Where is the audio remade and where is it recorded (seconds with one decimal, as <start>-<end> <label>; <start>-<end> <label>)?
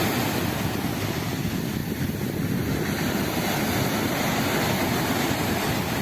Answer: 0.0-6.0 recorded